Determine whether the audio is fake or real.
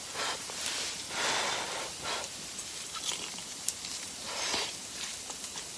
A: real